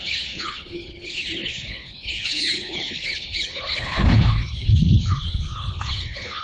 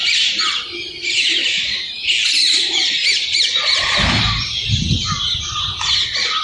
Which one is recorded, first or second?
second